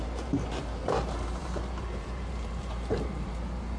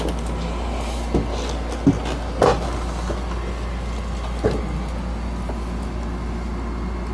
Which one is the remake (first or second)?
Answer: first